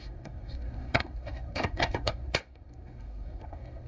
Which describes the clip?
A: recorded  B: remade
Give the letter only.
B